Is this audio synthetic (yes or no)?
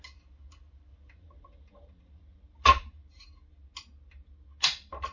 no